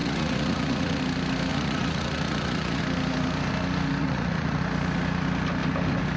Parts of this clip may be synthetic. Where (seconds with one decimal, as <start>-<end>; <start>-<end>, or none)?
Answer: 0.0-1.0; 1.5-2.8; 4.0-4.6